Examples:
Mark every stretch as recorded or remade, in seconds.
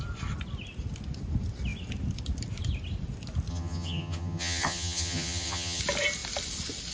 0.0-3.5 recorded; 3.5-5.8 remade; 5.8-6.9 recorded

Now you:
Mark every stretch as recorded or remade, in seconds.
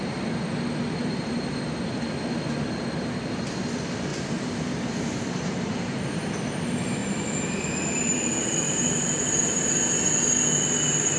0.0-1.0 recorded; 1.0-1.8 remade; 1.8-4.1 recorded; 4.1-6.3 remade; 6.3-7.0 recorded; 7.0-9.7 remade; 9.7-11.2 recorded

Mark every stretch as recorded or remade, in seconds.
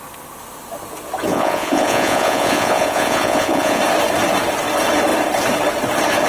0.0-1.3 recorded; 1.3-3.8 remade; 3.8-6.3 recorded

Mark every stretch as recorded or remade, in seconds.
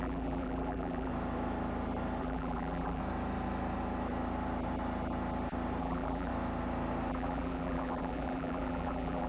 0.0-1.1 remade; 1.1-2.2 recorded; 2.2-3.0 remade; 3.0-5.8 recorded; 5.8-6.3 remade; 6.3-7.1 recorded; 7.1-9.3 remade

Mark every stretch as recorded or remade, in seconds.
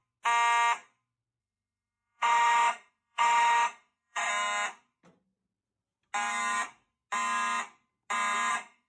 0.0-1.4 recorded; 1.4-4.3 remade; 4.3-8.5 recorded; 8.5-8.9 remade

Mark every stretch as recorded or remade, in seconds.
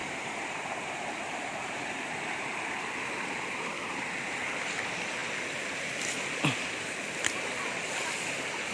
0.0-2.6 remade; 2.6-8.7 recorded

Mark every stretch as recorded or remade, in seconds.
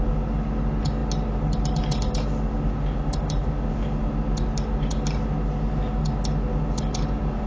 0.0-7.5 recorded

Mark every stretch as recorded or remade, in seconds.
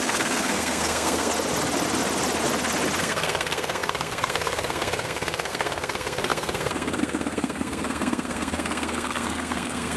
0.0-1.3 remade; 1.3-3.0 recorded; 3.0-10.0 remade